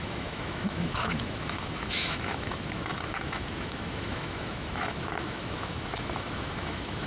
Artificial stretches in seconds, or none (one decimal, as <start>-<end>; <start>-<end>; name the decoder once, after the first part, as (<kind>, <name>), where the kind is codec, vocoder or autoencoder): 0.0-7.1 (autoencoder, DAC-VAE)